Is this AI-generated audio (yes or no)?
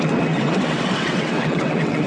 yes